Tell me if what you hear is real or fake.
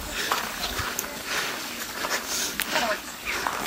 fake